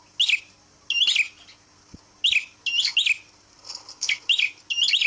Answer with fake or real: real